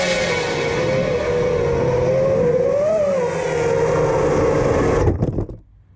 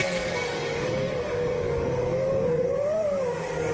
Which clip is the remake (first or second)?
second